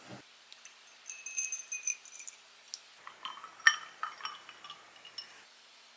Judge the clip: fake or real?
real